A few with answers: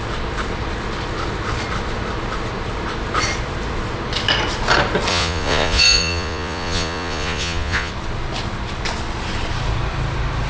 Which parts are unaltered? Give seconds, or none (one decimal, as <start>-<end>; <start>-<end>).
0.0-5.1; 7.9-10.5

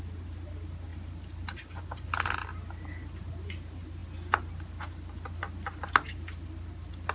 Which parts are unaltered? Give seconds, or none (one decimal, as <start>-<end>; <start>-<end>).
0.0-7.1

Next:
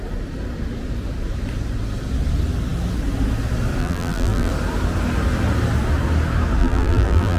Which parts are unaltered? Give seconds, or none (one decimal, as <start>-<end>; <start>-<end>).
0.0-3.8; 4.5-6.6

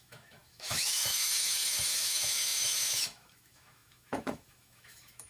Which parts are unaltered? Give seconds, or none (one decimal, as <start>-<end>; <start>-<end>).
none

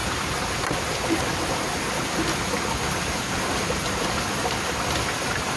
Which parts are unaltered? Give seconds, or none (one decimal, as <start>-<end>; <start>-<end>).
0.0-5.6

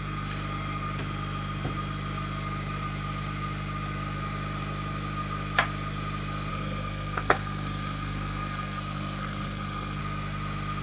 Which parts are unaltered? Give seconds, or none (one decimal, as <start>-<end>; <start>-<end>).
0.0-6.5; 10.0-10.8

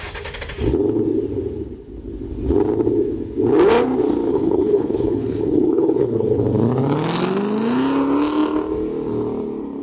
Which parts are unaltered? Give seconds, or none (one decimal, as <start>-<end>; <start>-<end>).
0.0-4.3; 6.4-9.8